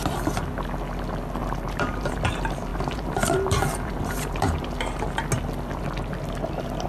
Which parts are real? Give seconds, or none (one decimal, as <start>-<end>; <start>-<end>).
0.0-1.4; 2.3-2.7; 4.8-6.9